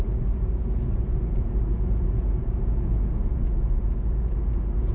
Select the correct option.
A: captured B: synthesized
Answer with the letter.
B